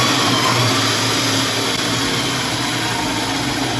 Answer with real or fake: real